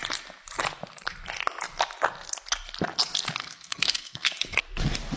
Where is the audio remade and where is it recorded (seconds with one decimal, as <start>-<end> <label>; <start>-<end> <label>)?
0.0-3.4 recorded; 3.4-4.3 remade; 4.3-5.2 recorded